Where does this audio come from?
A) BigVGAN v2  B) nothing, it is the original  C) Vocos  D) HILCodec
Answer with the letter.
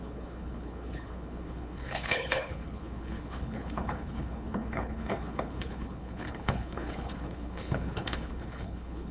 D